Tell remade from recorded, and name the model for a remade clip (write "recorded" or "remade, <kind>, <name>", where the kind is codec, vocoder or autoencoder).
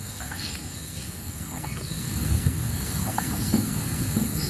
remade, codec, SNAC